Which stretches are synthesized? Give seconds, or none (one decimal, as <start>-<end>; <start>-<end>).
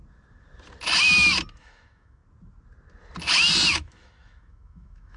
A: 1.6-2.2; 3.7-5.2